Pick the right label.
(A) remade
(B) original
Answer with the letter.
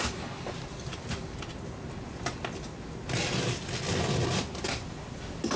B